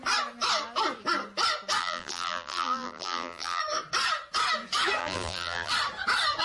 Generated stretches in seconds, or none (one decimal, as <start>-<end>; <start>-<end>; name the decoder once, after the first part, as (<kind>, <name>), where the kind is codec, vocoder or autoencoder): 1.8-3.6 (vocoder, BigVGAN v2); 5.0-5.7